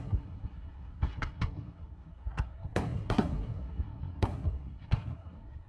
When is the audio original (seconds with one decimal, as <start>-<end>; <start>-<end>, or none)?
none